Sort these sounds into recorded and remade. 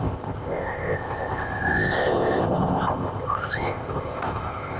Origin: remade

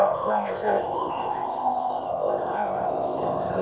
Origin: remade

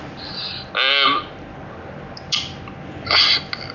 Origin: recorded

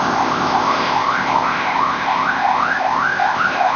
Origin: remade